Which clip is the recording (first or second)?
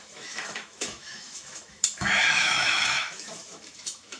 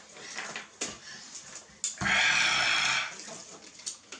second